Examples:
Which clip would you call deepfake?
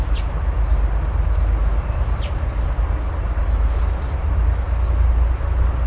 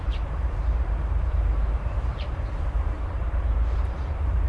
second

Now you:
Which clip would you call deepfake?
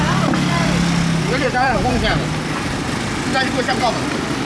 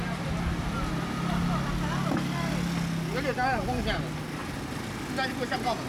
first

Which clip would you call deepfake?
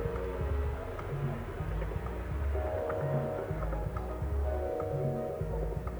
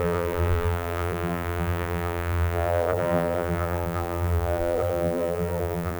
second